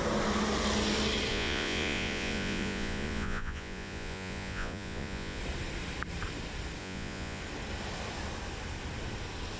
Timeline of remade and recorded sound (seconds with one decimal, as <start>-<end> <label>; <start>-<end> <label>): 0.0-1.3 recorded; 1.3-5.4 remade; 5.4-6.8 recorded; 6.8-7.4 remade; 7.4-9.6 recorded